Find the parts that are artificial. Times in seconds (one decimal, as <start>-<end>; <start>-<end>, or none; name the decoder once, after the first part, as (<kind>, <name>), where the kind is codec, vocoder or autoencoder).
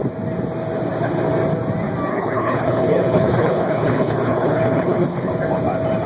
2.1-5.3 (codec, HILCodec)